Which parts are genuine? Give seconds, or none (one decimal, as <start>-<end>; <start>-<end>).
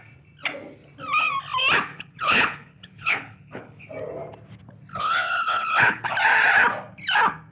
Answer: 0.0-1.9; 3.9-4.9; 6.1-7.5